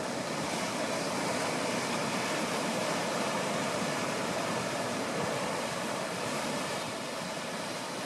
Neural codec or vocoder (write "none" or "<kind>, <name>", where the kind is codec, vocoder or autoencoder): vocoder, BigVGAN v2